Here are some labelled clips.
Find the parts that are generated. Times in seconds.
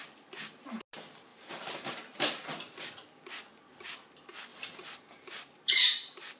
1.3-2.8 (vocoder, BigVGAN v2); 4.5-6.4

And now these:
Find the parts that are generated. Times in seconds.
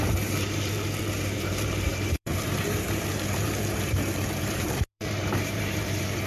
0.0-6.3 (vocoder, BigVGAN v2)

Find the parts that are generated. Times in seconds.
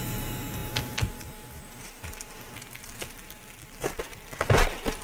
none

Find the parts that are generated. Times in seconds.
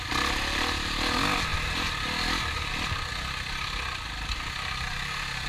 none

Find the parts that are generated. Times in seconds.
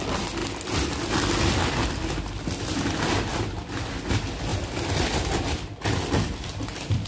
3.3-4.1 (vocoder, BigVGAN v2); 4.5-7.1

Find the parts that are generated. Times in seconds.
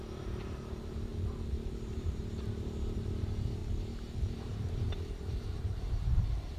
0.0-1.1 (vocoder, BigVGAN v2); 1.7-3.6; 4.2-6.6